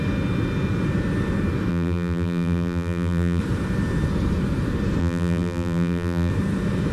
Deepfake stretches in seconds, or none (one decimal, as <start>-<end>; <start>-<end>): 1.7-3.4; 5.0-6.3